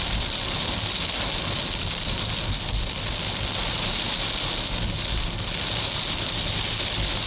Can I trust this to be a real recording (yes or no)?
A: yes